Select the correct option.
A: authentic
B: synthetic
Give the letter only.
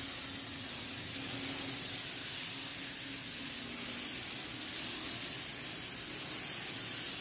A